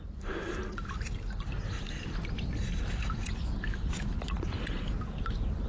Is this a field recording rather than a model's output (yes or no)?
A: yes